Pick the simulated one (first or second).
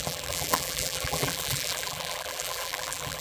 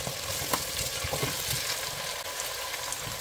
first